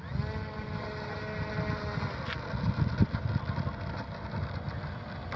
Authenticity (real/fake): real